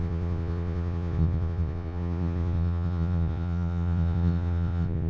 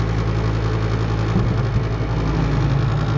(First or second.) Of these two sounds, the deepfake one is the first